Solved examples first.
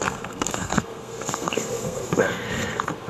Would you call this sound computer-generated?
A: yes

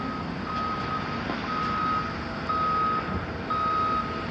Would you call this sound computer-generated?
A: no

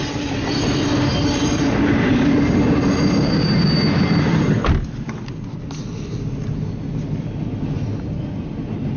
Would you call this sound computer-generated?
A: no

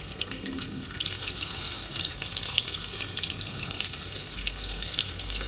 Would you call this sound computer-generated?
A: yes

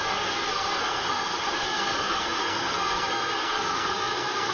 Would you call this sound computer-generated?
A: yes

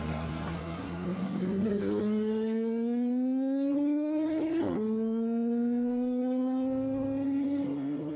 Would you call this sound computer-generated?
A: yes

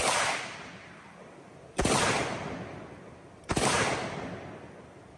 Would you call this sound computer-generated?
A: no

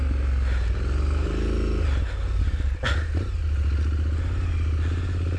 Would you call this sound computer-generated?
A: no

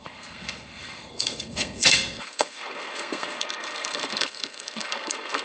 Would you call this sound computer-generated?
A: yes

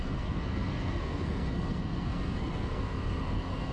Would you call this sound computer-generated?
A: yes